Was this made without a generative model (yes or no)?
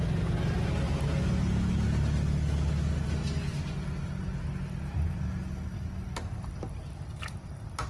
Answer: yes